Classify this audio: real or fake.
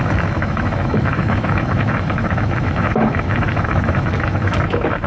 fake